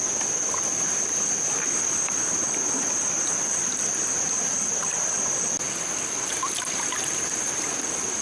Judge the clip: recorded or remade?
recorded